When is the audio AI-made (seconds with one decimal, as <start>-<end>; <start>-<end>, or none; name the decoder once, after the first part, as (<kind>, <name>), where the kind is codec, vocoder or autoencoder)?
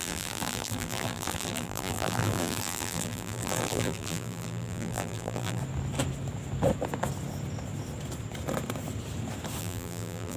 0.0-5.6 (vocoder, BigVGAN v2); 9.6-10.4